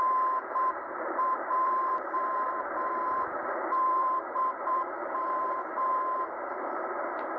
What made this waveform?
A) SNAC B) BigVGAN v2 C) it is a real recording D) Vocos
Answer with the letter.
B